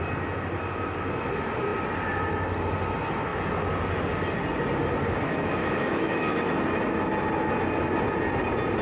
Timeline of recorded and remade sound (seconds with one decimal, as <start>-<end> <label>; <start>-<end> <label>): 0.0-5.6 recorded; 5.6-6.8 remade; 6.8-8.8 recorded